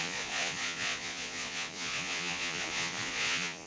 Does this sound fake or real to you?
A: fake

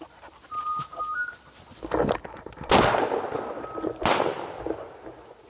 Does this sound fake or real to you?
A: real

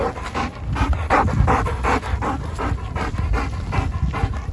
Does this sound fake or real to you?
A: real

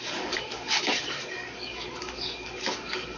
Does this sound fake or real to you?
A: fake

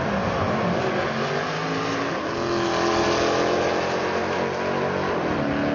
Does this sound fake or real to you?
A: real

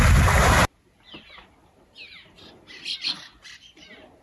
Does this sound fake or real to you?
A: real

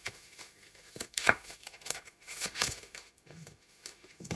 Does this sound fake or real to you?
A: fake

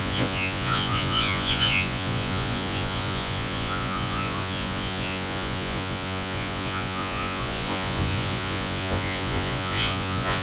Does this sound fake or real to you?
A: fake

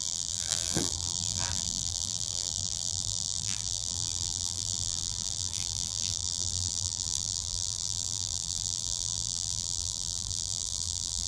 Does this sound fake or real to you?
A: fake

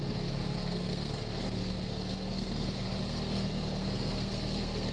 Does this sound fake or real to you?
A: fake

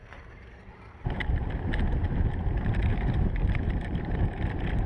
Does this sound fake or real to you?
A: fake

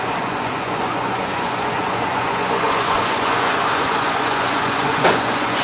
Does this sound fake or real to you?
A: fake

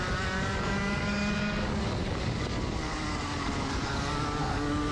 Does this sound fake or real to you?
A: fake